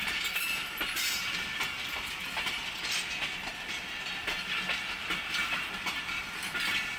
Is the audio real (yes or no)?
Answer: yes